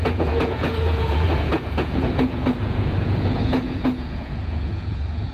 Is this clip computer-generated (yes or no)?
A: yes